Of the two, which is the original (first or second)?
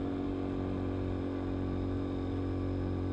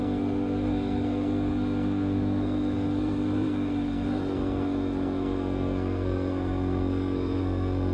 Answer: first